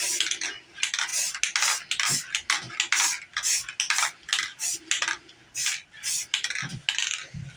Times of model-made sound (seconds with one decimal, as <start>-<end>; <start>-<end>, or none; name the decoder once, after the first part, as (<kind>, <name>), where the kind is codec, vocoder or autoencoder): none